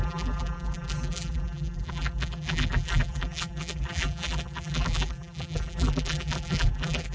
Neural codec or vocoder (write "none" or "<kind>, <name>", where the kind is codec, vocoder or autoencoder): vocoder, BigVGAN v2